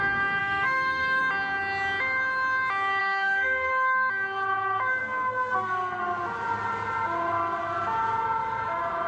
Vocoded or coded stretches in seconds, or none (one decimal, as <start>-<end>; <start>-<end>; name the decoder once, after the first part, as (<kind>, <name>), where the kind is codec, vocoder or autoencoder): 0.4-1.2 (codec, SNAC); 3.0-3.7; 5.0-6.0